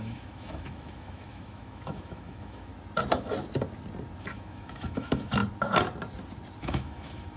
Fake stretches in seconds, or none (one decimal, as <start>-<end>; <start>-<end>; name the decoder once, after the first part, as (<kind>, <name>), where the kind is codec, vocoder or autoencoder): 0.0-2.7 (autoencoder, DAC-VAE); 4.2-5.4; 6.6-7.4